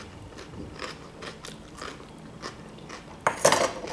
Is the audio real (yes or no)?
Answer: yes